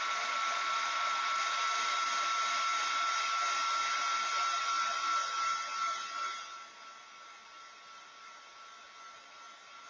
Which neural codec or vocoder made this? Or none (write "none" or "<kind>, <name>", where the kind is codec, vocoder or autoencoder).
none